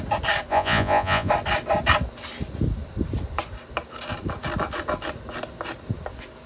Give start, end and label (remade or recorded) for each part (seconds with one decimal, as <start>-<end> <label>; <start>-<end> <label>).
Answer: 0.0-0.5 recorded; 0.5-1.3 remade; 1.3-6.5 recorded